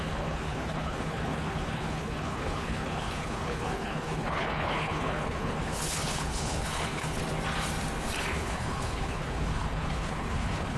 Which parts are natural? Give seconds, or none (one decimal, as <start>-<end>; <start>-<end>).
7.2-8.3

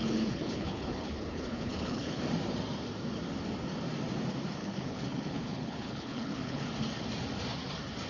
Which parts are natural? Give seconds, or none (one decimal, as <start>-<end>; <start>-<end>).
2.2-4.6; 6.7-8.1

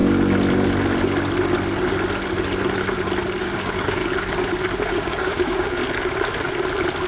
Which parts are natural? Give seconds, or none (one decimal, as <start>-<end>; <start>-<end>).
0.0-3.4; 4.0-4.9; 5.8-7.1

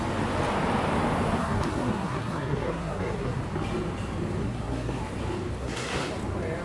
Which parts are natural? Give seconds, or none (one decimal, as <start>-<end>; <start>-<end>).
0.0-1.4; 3.4-4.4; 5.0-5.6; 6.1-6.6

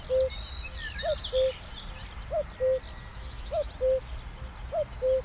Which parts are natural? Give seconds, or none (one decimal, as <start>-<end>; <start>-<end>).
0.0-3.1; 3.7-5.2

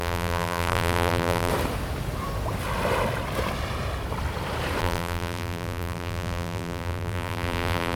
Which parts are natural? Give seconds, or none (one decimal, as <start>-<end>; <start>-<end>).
1.5-4.8

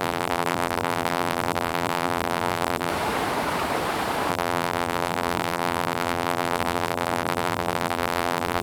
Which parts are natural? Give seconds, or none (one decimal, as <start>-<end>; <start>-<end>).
2.9-4.3

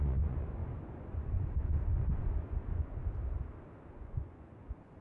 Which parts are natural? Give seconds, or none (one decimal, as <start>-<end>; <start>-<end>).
3.0-3.9